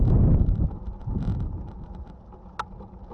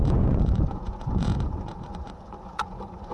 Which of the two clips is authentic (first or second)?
first